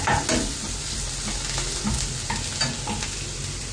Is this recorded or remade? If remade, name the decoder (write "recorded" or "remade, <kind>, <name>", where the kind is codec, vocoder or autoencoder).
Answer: recorded